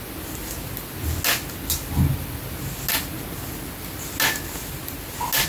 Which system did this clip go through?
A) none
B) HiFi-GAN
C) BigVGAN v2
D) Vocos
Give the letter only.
A